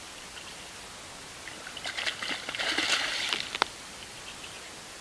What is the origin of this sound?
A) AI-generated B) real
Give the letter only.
B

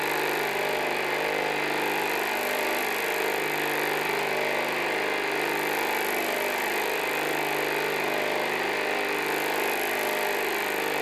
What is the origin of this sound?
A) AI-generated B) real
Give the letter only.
B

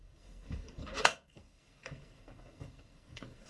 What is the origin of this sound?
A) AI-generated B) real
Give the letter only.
A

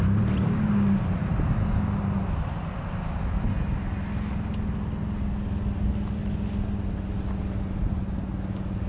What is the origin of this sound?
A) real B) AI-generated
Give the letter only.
A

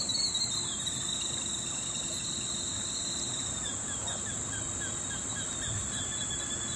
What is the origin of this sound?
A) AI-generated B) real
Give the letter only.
B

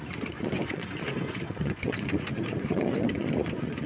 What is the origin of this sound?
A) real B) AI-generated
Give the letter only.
B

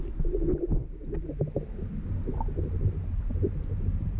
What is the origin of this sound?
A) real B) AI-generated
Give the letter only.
A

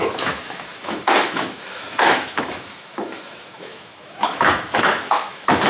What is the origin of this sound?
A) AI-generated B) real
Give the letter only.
A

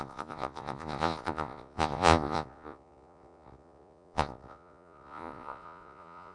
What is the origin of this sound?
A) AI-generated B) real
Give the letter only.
A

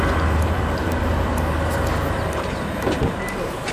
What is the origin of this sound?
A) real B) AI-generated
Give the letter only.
B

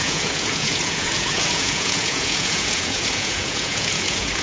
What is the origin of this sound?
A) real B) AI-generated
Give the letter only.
B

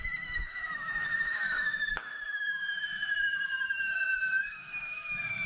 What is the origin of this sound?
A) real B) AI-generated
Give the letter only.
B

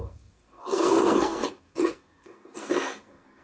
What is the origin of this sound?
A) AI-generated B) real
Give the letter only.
A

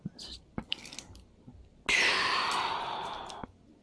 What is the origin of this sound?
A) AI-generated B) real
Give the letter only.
B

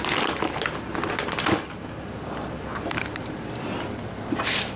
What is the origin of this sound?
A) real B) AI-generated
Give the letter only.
A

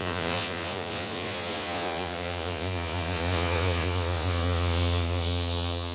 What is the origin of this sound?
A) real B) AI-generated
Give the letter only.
B